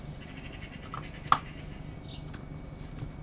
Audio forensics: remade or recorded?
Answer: recorded